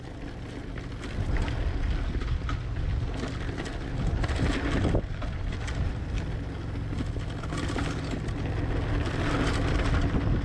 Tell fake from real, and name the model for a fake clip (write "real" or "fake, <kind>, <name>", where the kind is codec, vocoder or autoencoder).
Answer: real